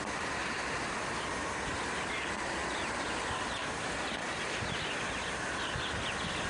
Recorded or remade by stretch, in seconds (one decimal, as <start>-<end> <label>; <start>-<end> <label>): 0.0-0.4 remade; 0.4-1.7 recorded; 1.7-2.6 remade; 2.6-6.5 recorded